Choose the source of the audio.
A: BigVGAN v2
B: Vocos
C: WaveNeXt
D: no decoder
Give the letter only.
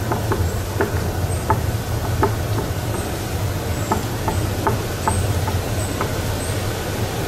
D